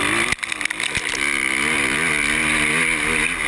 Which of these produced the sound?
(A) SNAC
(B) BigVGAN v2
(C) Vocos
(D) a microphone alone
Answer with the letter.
D